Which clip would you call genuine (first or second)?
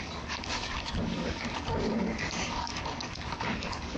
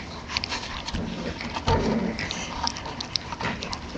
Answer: second